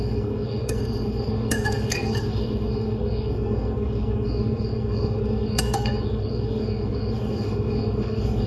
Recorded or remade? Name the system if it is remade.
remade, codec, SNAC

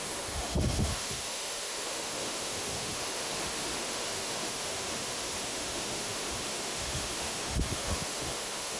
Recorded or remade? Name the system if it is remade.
remade, autoencoder, DAC-VAE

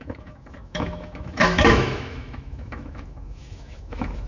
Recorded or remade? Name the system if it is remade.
remade, autoencoder, DAC-VAE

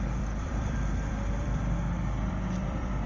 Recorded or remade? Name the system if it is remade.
remade, vocoder, BigVGAN v2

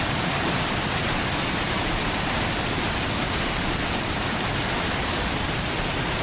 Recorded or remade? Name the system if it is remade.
remade, vocoder, BigVGAN v2